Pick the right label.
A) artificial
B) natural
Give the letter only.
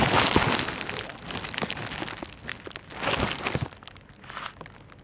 B